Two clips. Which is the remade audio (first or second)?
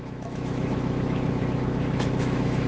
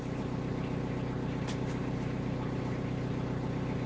first